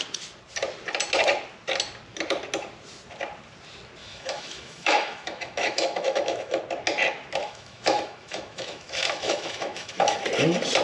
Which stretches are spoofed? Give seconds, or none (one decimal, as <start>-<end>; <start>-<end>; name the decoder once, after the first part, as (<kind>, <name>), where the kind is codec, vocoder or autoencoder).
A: 4.0-6.6 (autoencoder, DAC-VAE); 7.4-10.2